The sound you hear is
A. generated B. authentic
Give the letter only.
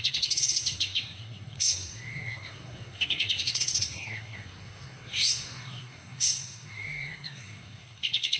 A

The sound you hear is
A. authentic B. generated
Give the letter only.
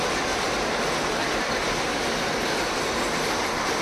A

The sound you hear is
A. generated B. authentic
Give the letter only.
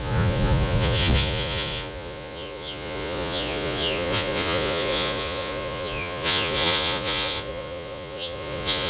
A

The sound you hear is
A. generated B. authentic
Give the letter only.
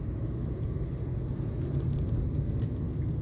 B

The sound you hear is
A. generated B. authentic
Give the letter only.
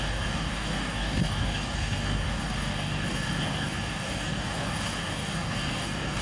A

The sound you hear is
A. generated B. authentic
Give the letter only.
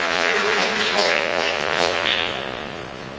A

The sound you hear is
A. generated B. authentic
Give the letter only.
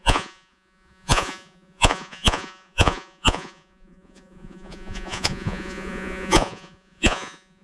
A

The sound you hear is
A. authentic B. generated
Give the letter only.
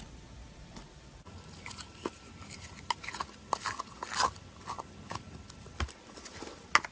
A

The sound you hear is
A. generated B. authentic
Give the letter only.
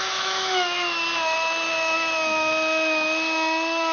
A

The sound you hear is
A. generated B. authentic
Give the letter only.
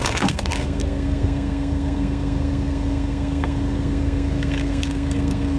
A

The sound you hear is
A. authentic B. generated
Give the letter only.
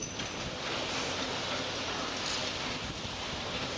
A